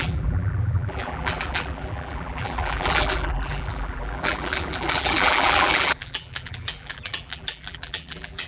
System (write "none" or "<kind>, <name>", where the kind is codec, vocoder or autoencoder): vocoder, BigVGAN v2